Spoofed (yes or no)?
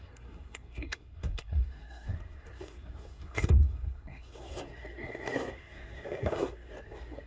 yes